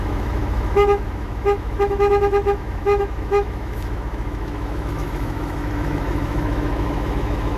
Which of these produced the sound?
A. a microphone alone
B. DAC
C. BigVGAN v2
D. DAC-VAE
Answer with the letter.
D